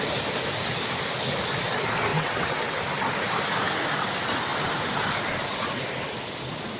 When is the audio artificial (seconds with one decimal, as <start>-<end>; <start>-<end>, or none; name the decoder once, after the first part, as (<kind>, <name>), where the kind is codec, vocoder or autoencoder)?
2.1-2.8 (vocoder, WaveNeXt)